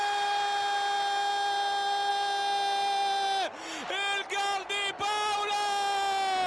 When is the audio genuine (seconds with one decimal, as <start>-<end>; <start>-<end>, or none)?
0.0-6.5